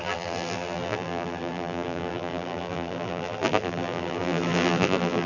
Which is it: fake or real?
fake